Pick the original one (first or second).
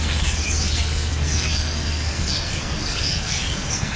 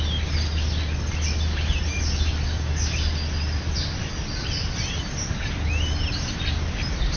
second